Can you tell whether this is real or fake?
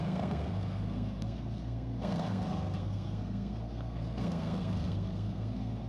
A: fake